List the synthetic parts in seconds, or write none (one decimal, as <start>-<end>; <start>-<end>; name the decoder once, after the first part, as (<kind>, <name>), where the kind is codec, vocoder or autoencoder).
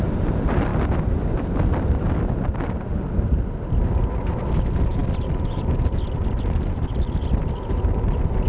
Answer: none